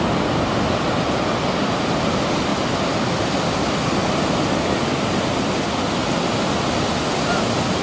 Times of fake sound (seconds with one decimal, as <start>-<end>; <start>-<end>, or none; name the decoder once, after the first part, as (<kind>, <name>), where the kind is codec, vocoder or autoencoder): none